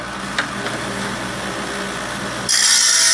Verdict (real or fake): real